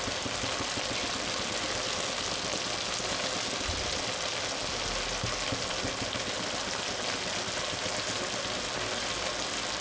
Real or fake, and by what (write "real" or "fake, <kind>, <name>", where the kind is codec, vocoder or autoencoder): real